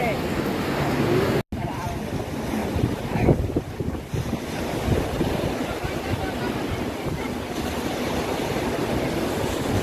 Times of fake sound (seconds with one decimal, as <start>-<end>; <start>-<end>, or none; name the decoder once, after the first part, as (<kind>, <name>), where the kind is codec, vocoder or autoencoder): none